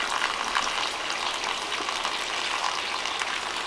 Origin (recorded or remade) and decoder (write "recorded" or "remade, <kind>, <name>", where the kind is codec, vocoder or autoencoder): recorded